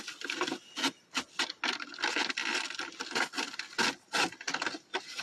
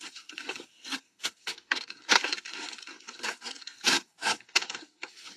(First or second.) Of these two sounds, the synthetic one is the second